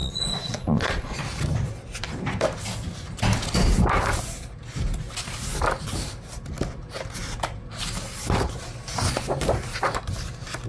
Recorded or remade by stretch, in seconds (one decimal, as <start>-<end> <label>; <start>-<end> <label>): 0.0-1.2 remade; 1.2-10.7 recorded